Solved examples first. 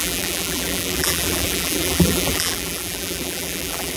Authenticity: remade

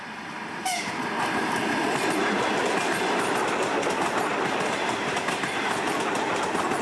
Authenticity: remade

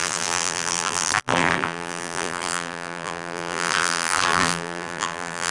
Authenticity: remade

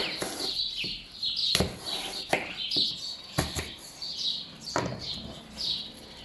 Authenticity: recorded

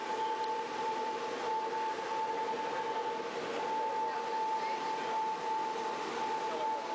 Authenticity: recorded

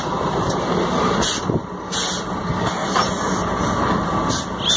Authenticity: recorded